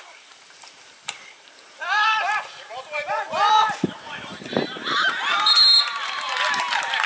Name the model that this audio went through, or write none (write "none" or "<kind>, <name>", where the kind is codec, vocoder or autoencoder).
vocoder, BigVGAN v2